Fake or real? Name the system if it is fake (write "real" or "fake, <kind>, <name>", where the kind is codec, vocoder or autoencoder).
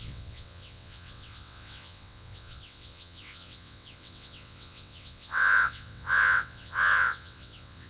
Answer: fake, vocoder, WaveNeXt